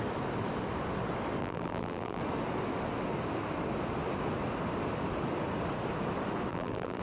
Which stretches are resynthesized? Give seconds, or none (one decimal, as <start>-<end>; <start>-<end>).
1.4-2.2; 6.5-7.0